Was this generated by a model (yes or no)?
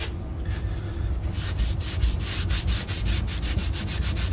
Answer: no